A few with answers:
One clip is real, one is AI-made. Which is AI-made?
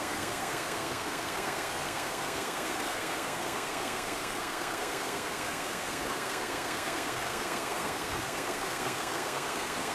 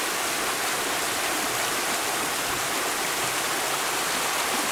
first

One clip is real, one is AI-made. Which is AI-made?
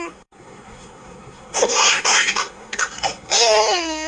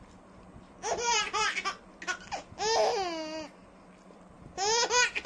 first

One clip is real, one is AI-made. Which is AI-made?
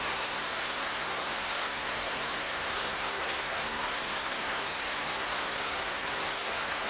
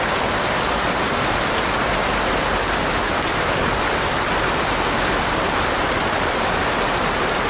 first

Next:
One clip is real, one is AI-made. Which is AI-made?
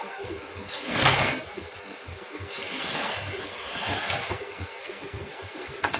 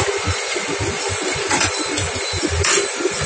first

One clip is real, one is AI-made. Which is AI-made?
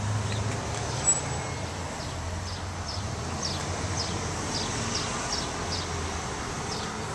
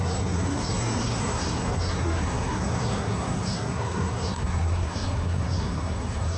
second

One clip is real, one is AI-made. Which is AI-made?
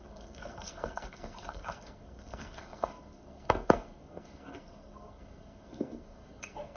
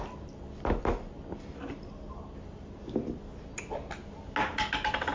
first